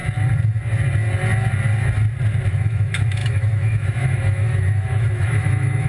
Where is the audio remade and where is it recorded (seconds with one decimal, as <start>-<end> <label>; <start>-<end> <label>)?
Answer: 0.0-2.5 recorded; 2.5-5.9 remade